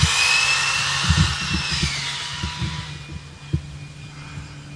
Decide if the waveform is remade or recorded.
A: recorded